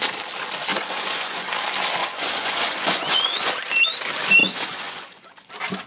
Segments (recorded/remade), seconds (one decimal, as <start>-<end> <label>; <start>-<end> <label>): 0.0-0.7 recorded; 0.7-1.5 remade; 1.5-2.0 recorded; 2.0-3.5 remade; 3.5-4.4 recorded; 4.4-5.5 remade; 5.5-5.9 recorded